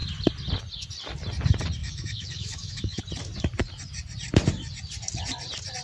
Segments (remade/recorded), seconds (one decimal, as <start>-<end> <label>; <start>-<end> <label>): 0.0-1.8 recorded; 1.8-3.0 remade; 3.0-5.8 recorded